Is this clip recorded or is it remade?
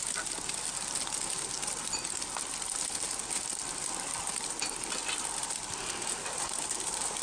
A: recorded